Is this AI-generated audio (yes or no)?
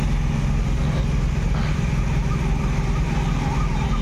no